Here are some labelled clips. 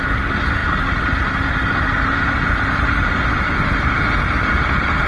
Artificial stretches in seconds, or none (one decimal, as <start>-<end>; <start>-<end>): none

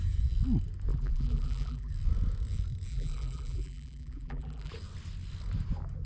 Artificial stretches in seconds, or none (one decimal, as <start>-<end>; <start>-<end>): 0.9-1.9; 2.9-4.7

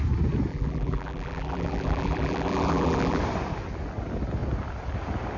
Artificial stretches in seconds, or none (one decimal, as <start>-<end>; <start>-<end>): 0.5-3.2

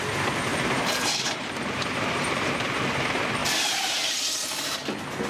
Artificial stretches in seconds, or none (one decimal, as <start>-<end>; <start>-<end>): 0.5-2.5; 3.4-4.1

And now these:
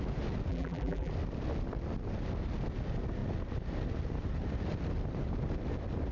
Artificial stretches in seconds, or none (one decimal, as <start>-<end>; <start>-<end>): 0.5-1.1